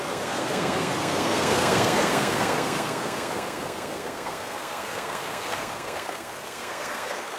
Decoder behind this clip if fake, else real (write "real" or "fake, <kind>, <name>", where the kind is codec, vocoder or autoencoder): fake, codec, SNAC